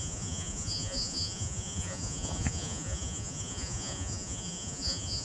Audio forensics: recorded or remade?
remade